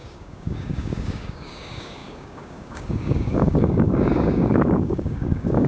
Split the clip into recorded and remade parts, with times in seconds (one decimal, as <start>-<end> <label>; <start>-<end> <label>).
0.0-5.7 remade